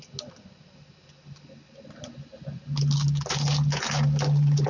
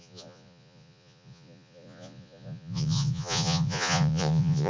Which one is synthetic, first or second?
second